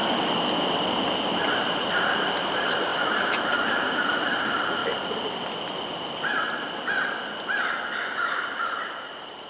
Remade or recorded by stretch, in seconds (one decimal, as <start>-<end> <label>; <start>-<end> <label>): 0.0-1.8 recorded; 1.8-4.8 remade; 4.8-8.8 recorded; 8.8-9.5 remade